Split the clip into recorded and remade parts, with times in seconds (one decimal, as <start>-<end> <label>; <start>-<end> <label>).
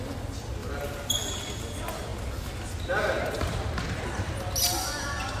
0.0-0.6 recorded; 0.6-1.3 remade; 1.3-5.4 recorded